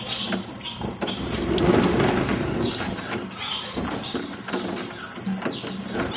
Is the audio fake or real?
real